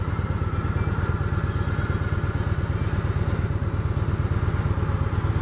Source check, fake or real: real